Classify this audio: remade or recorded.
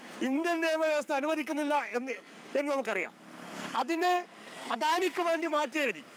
remade